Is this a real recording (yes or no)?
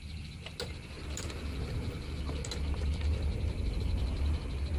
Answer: yes